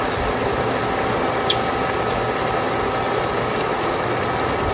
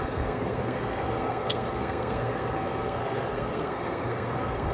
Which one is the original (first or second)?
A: first